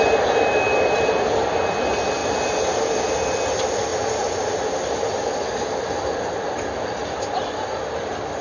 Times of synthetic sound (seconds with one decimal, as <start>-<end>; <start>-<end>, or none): none